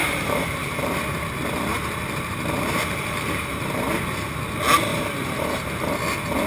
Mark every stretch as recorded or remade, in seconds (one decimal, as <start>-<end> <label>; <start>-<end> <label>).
0.0-3.9 remade; 3.9-4.9 recorded; 4.9-5.9 remade; 5.9-6.5 recorded